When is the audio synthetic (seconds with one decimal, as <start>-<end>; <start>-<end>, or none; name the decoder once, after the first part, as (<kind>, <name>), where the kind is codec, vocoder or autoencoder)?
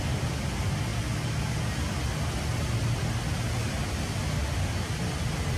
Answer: none